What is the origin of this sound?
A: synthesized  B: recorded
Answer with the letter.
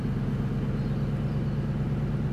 B